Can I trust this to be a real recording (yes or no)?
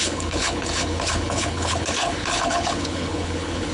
no